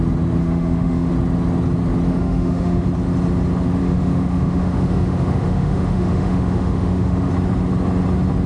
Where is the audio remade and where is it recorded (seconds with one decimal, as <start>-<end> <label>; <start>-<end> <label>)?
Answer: 0.0-0.4 recorded; 0.4-1.1 remade; 1.1-2.1 recorded; 2.1-2.9 remade; 2.9-3.8 recorded; 3.8-7.3 remade; 7.3-8.5 recorded